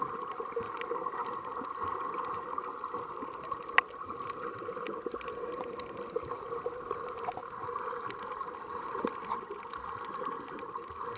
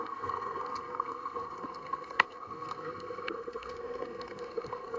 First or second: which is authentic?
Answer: first